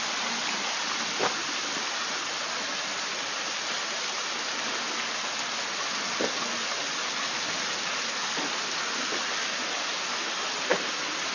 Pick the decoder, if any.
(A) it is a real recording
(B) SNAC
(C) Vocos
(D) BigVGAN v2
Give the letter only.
A